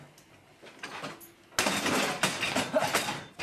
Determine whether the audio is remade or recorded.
recorded